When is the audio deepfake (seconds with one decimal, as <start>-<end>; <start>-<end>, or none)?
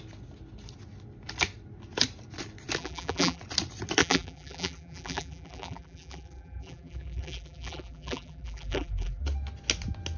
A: 2.8-3.4; 4.0-9.2